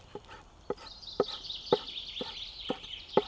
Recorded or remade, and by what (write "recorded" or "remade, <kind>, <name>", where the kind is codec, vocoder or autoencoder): recorded